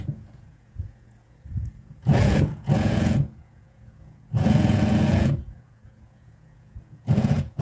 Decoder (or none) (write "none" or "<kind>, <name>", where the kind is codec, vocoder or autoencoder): vocoder, Vocos